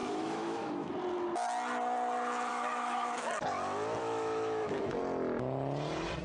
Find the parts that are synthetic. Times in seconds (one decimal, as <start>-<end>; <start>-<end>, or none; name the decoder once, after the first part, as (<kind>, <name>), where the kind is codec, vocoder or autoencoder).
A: 0.0-0.9 (autoencoder, DAC-VAE); 2.5-3.3; 4.0-4.9